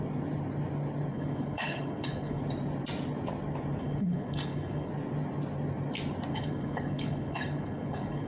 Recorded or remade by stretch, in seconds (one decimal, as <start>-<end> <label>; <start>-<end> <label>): 0.0-1.1 recorded; 1.1-2.4 remade; 2.4-3.8 recorded; 3.8-4.9 remade; 4.9-6.3 recorded; 6.3-8.3 remade